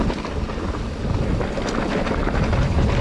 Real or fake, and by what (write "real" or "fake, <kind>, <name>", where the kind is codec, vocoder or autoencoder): real